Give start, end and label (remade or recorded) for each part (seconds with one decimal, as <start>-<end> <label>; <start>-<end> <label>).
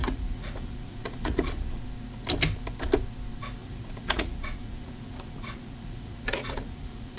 0.0-1.8 remade; 1.8-3.6 recorded; 3.6-7.2 remade